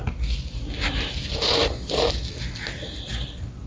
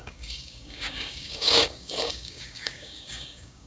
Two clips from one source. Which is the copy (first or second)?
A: second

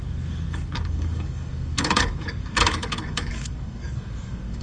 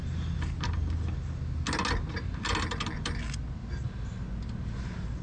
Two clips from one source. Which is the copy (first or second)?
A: first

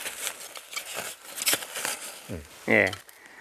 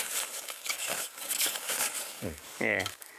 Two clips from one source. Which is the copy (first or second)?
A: second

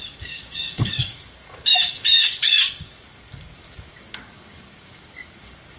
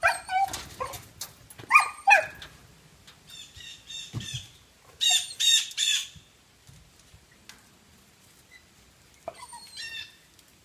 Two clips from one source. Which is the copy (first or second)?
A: first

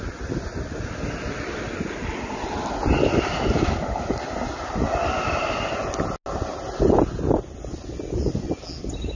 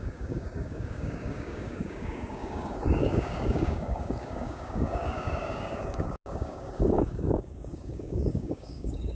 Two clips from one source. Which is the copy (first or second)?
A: second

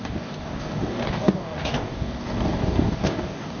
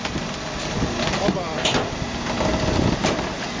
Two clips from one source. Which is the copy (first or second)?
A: first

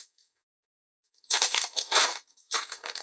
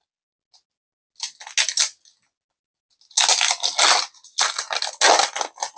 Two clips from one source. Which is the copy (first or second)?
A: first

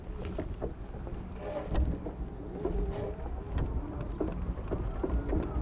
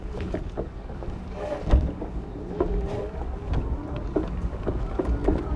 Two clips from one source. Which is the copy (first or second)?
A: second